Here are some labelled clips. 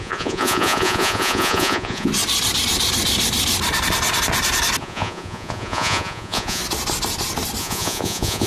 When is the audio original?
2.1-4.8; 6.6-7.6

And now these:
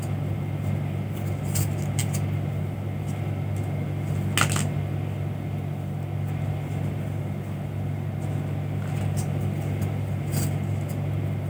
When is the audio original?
0.0-11.5

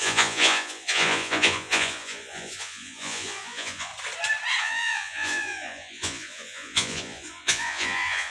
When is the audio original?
3.9-4.6